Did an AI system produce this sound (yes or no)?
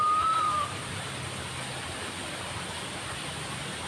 no